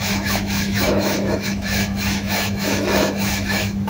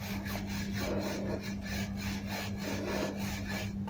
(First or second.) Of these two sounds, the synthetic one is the first